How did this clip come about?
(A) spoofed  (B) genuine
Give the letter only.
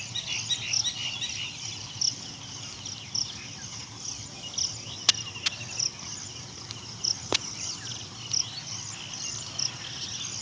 B